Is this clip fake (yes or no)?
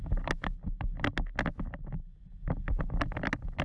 no